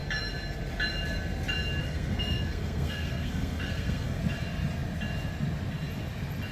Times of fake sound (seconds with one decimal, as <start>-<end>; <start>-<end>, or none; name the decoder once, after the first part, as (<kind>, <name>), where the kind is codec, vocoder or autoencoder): 1.8-4.2 (codec, SNAC)